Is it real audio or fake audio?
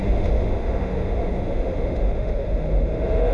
fake